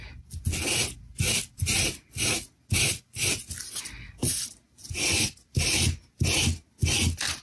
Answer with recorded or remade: recorded